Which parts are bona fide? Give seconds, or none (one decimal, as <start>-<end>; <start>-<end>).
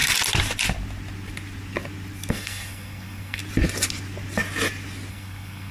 0.0-2.3; 3.4-5.1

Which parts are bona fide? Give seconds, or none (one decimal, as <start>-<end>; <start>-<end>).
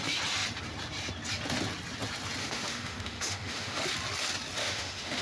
0.0-2.4; 3.8-4.6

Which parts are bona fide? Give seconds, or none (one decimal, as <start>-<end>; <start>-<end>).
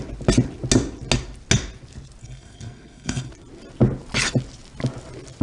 0.0-2.2; 3.3-5.4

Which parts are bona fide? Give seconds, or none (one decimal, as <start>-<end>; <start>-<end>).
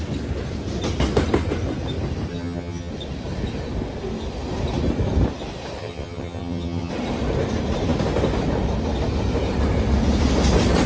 0.0-2.3; 2.9-5.8; 6.9-10.9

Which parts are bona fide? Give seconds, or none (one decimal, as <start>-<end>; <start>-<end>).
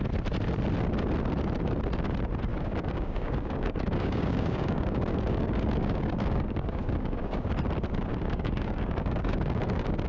0.0-2.5; 7.5-8.1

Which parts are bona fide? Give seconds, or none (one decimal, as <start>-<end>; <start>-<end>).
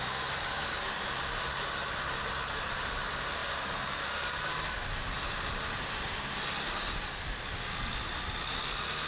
0.0-9.1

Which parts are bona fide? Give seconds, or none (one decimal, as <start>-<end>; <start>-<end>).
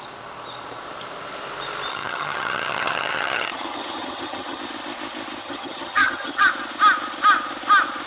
0.0-1.9; 4.6-5.4; 6.5-8.1